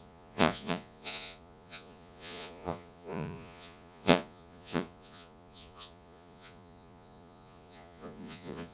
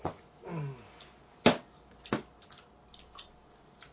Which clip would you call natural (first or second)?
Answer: second